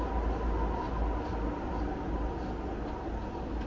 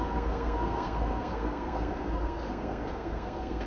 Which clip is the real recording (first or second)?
first